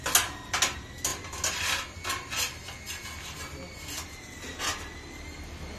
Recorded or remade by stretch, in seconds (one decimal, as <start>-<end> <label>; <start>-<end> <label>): 0.0-5.8 recorded